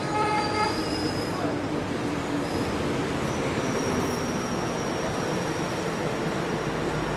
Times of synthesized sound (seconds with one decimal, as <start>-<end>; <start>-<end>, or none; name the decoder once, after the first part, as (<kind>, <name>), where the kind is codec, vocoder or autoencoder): 1.0-1.7 (vocoder, BigVGAN v2)

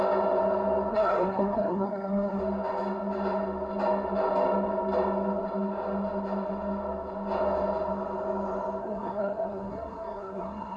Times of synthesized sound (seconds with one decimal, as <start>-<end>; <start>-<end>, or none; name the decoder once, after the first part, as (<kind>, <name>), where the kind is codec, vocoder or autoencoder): 0.9-2.4 (codec, SNAC); 8.8-10.8

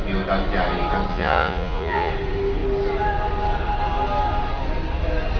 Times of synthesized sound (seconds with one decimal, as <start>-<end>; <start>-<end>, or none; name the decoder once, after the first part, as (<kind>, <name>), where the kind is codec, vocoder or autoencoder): 1.1-2.1 (vocoder, Vocos)